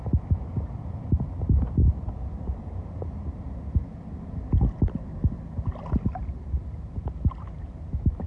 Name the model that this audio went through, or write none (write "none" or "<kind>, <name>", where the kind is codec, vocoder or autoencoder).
none